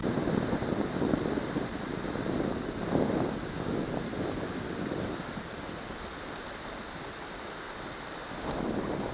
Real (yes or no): yes